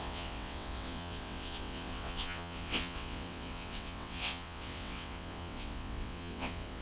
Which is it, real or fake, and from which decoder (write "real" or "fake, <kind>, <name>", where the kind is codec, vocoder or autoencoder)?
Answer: fake, vocoder, WaveNeXt